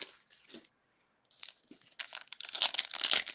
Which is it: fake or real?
real